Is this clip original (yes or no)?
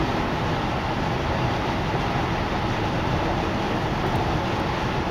yes